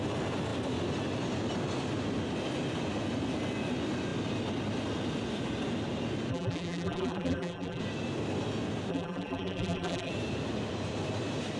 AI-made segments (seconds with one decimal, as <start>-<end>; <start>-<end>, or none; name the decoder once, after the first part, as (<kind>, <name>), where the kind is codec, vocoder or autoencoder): 6.3-7.8 (vocoder, BigVGAN v2); 8.9-10.1